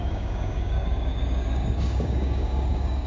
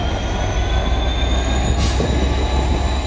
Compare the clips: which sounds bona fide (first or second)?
second